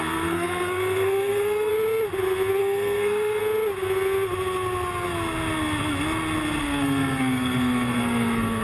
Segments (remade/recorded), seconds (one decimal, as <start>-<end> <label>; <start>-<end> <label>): 0.0-1.7 remade; 1.7-2.6 recorded; 2.6-3.4 remade; 3.4-6.6 recorded; 6.6-8.6 remade